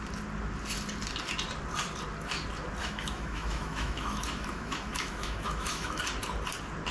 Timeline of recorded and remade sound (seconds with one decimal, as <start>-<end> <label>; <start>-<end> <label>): 0.0-2.8 recorded; 2.8-6.0 remade; 6.0-6.9 recorded